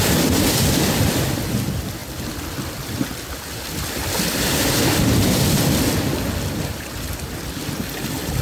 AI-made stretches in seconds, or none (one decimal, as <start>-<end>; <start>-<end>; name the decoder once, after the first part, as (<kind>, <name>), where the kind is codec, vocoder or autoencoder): none